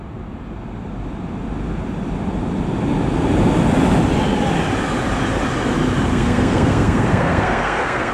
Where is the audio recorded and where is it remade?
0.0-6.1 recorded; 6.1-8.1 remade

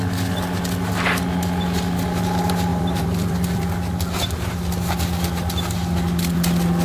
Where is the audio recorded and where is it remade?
0.0-2.7 recorded; 2.7-3.7 remade; 3.7-6.8 recorded